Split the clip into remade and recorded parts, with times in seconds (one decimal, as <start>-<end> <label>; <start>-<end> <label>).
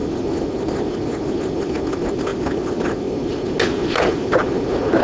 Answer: 0.0-5.0 recorded